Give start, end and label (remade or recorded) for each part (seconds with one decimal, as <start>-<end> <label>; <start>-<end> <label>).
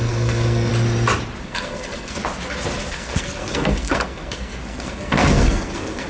0.0-0.7 remade; 0.7-1.4 recorded; 1.4-2.2 remade; 2.2-2.9 recorded; 2.9-6.1 remade